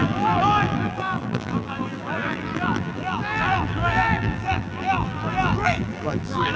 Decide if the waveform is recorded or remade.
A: remade